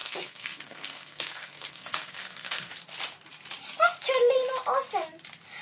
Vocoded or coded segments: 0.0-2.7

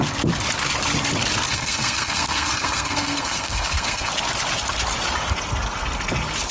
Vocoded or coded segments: 1.5-4.1